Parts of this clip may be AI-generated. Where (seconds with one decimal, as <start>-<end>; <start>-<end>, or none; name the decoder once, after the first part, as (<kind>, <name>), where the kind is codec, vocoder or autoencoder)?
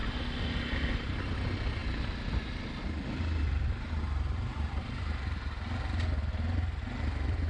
4.5-5.6 (vocoder, BigVGAN v2)